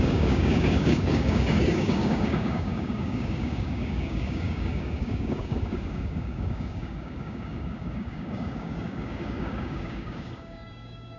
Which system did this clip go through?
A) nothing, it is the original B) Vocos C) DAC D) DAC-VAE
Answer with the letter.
C